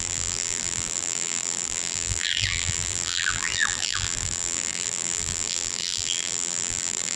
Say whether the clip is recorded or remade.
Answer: remade